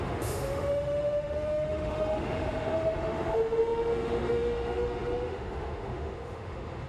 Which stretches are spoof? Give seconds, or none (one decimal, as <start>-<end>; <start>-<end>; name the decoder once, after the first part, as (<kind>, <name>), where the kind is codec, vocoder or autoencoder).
0.0-6.9 (autoencoder, DAC-VAE)